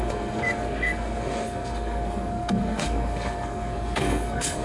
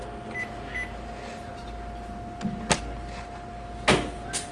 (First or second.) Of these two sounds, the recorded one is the second